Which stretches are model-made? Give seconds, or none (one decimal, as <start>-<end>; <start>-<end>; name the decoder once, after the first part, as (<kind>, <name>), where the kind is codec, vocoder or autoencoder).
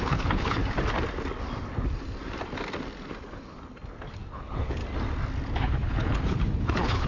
0.0-0.6 (codec, HILCodec); 4.3-4.8; 5.6-7.1